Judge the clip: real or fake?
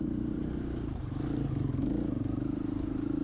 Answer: real